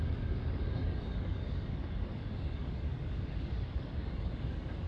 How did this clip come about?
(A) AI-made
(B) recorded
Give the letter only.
A